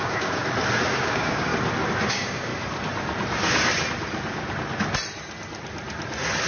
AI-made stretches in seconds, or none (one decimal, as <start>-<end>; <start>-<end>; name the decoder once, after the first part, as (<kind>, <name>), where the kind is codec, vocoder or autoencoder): 0.0-0.4 (codec, DAC); 0.9-1.5; 2.1-2.5